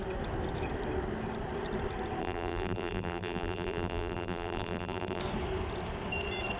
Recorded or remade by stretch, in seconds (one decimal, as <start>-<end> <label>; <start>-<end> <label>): 0.0-2.2 recorded; 2.2-5.2 remade; 5.2-6.6 recorded